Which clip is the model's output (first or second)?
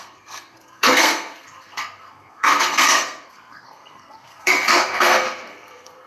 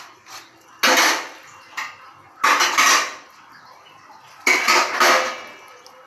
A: first